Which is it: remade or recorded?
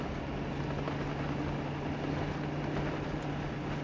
recorded